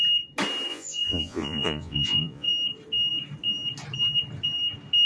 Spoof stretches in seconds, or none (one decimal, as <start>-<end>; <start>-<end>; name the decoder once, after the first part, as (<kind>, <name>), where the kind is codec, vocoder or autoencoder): 0.7-2.5 (vocoder, Vocos)